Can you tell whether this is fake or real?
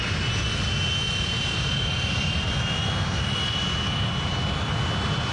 real